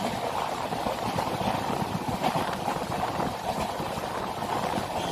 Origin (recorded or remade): recorded